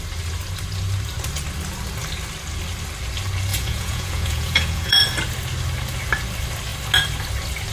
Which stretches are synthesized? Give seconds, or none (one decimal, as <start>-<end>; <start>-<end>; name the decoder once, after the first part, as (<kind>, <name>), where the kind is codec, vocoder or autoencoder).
3.5-5.0 (vocoder, Vocos)